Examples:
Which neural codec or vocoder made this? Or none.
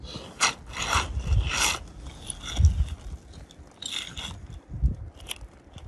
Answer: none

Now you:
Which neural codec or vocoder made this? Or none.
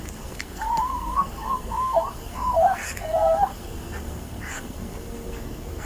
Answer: codec, SNAC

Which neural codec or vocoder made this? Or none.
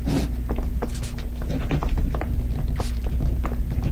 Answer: none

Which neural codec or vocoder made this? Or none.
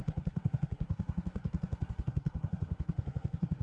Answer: codec, SNAC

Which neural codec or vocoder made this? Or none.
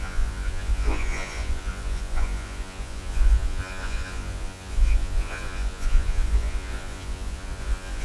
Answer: vocoder, Vocos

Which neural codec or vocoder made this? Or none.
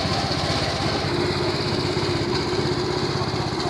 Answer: none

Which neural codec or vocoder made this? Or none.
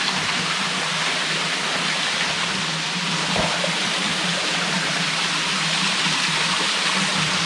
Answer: none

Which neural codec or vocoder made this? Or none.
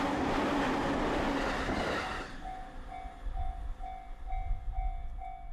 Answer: none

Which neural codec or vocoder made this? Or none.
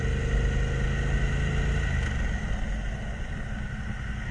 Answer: none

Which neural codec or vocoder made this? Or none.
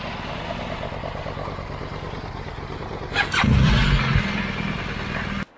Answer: none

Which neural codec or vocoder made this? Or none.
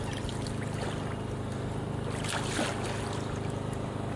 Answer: none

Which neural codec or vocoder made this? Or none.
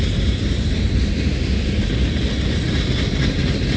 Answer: none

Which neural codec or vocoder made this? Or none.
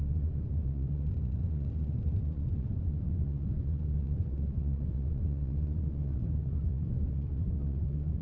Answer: vocoder, Vocos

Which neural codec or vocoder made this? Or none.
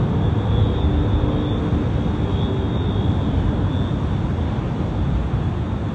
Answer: none